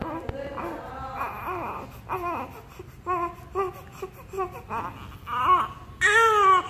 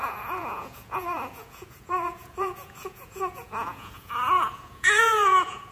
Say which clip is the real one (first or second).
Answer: first